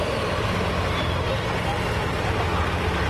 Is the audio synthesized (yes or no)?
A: no